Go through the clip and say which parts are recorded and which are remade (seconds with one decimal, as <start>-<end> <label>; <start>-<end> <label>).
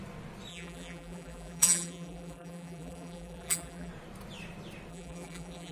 0.0-0.5 recorded; 0.5-3.9 remade; 3.9-4.9 recorded; 4.9-5.7 remade